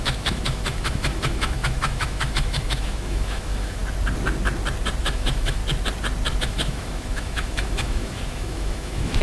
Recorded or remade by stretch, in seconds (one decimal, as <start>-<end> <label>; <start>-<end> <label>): 0.0-3.8 remade; 3.8-5.0 recorded; 5.0-5.6 remade; 5.6-6.4 recorded; 6.4-9.2 remade

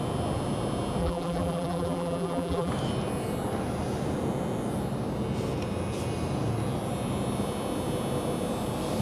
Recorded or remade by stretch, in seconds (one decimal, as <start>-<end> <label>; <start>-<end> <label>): 0.0-1.0 recorded; 1.0-2.7 remade; 2.7-9.0 recorded

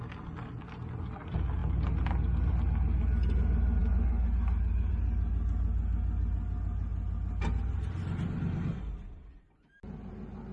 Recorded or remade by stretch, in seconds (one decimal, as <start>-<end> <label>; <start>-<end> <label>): 0.0-10.5 recorded

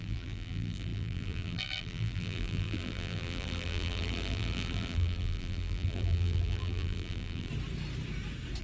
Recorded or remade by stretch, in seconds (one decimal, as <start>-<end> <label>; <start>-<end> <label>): 0.0-7.5 remade; 7.5-8.6 recorded